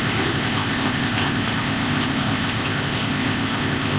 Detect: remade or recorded remade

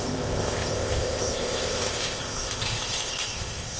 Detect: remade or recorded remade